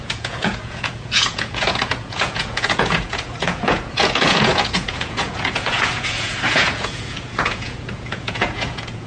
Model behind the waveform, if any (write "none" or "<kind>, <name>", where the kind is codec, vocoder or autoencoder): vocoder, Vocos